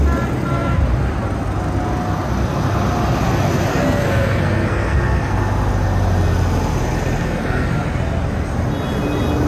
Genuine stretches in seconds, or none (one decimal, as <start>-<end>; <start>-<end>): 0.0-3.7; 5.4-7.2; 7.7-9.5